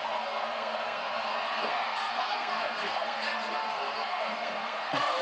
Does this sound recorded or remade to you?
remade